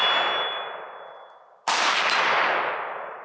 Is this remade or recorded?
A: recorded